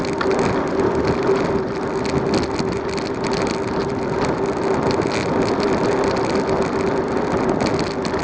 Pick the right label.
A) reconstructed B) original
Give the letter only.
B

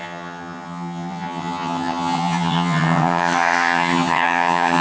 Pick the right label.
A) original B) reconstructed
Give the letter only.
B